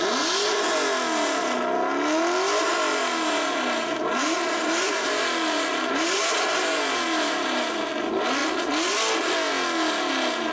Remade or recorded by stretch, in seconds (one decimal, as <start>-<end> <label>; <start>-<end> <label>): 0.0-2.9 recorded; 2.9-7.9 remade; 7.9-10.5 recorded